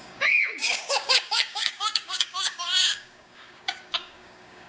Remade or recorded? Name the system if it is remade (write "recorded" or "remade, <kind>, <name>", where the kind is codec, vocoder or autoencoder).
remade, codec, DAC